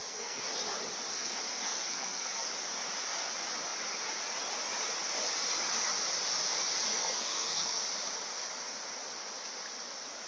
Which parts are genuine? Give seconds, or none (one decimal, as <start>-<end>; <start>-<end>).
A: 0.5-1.1; 2.5-6.9; 7.8-10.3